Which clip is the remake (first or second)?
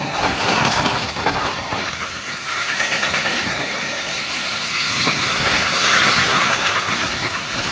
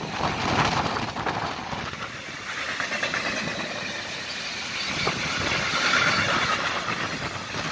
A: first